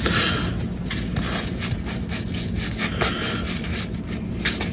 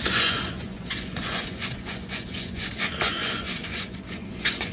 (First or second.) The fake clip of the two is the second